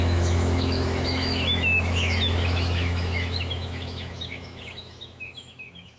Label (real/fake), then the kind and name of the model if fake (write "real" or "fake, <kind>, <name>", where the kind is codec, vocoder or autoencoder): fake, autoencoder, DAC-VAE